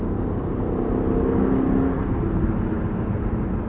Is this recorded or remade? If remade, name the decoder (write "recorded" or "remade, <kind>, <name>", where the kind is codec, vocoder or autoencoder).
recorded